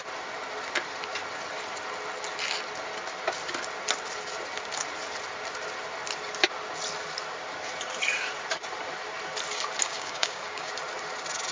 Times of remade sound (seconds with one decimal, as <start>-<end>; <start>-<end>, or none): 9.8-10.7